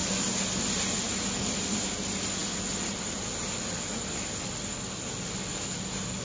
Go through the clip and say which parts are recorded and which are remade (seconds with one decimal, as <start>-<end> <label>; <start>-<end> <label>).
0.0-6.2 recorded